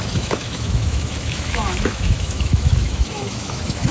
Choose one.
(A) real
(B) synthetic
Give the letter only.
B